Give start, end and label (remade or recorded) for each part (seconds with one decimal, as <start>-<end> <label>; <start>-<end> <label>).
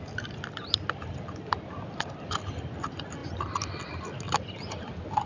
0.0-5.3 recorded